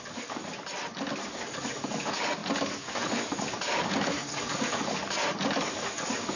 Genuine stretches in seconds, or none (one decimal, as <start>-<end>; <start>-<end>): 0.4-1.1; 5.0-5.6